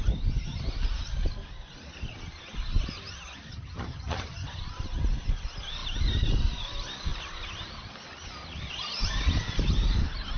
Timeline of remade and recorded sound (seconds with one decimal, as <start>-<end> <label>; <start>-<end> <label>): 0.0-3.5 recorded; 3.5-4.6 remade; 4.6-10.4 recorded